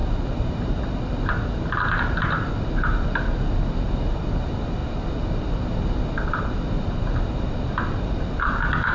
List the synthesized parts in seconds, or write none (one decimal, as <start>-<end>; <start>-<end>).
none